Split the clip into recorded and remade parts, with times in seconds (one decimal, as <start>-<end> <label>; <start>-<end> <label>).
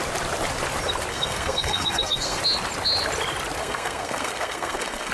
0.0-1.1 recorded; 1.1-2.4 remade; 2.4-3.6 recorded; 3.6-5.1 remade